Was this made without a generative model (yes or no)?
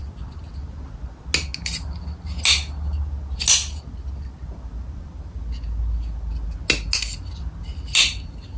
yes